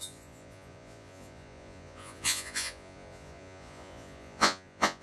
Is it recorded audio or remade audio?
remade